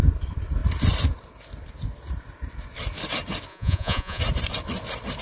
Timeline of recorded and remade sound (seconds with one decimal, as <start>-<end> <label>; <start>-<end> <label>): 0.0-3.5 recorded; 3.5-4.2 remade; 4.2-5.2 recorded